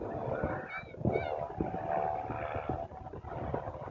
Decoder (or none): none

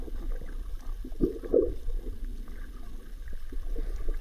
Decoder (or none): none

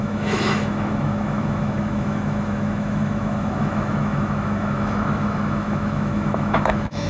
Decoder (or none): autoencoder, DAC-VAE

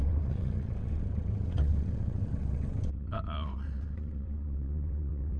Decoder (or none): vocoder, WaveNeXt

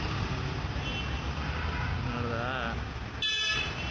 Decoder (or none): none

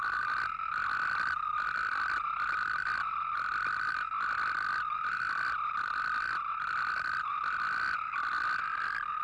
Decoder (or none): none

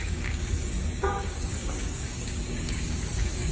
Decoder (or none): codec, DAC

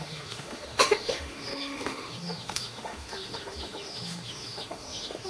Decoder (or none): autoencoder, DAC-VAE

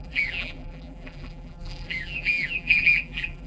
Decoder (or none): vocoder, BigVGAN v2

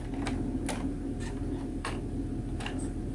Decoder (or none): none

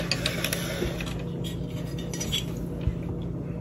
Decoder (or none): none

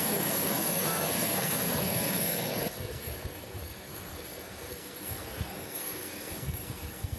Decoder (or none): codec, SNAC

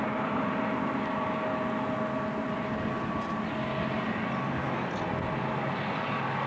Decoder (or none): none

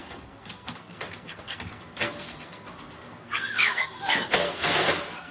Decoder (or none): codec, SNAC